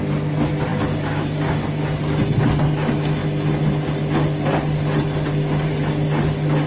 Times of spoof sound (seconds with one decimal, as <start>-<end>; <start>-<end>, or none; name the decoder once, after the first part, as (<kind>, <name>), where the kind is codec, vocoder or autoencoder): none